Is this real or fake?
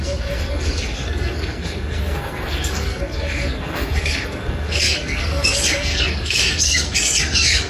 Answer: fake